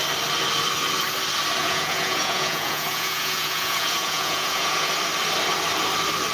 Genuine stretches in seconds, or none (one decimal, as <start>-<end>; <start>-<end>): 0.0-1.6; 4.9-6.3